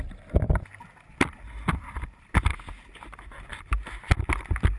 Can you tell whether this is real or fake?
real